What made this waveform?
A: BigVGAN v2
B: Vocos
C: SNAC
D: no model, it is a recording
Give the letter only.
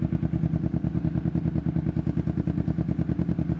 D